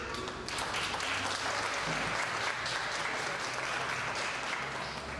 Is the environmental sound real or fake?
real